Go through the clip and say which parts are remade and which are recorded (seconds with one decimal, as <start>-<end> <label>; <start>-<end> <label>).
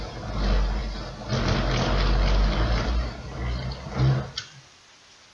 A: 0.0-5.3 recorded